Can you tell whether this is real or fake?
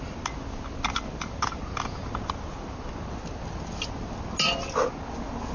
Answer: real